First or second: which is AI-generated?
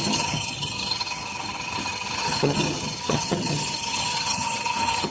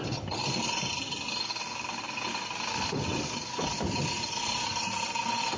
first